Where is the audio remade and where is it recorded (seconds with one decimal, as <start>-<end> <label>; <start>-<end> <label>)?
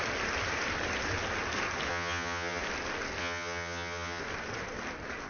0.0-1.9 recorded; 1.9-2.6 remade; 2.6-3.2 recorded; 3.2-4.2 remade; 4.2-5.3 recorded